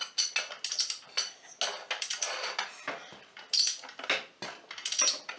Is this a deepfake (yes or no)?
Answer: no